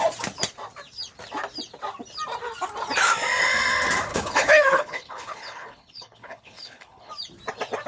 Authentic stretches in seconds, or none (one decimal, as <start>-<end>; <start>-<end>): 0.0-4.1; 7.1-7.9